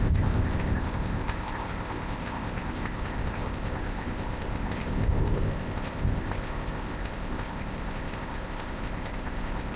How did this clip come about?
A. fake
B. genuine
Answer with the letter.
A